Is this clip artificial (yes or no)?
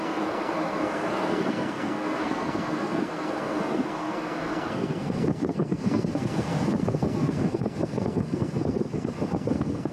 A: yes